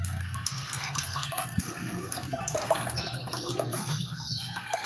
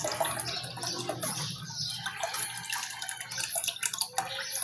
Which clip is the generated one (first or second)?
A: first